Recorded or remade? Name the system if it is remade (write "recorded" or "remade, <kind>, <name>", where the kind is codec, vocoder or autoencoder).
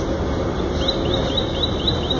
recorded